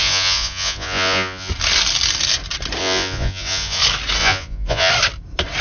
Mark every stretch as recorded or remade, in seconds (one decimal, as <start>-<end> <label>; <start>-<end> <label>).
0.0-1.5 remade; 1.5-2.8 recorded; 2.8-3.8 remade; 3.8-4.2 recorded; 4.2-4.9 remade; 4.9-5.6 recorded